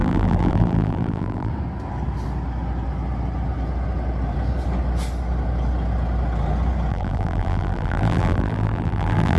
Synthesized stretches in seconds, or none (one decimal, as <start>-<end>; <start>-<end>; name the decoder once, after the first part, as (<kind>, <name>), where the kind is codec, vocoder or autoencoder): 0.0-1.5 (vocoder, BigVGAN v2); 6.9-9.4